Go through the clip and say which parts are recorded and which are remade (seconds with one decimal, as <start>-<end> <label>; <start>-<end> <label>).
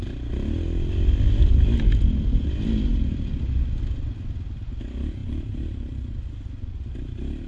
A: 0.0-7.5 recorded